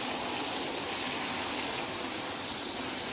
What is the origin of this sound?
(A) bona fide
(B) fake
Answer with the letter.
A